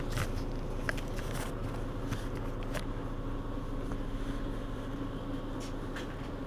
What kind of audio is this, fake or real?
real